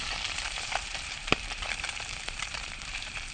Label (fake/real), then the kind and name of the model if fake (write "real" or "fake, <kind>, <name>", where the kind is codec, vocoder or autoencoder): fake, vocoder, BigVGAN v2